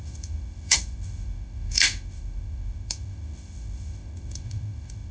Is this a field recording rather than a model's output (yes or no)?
no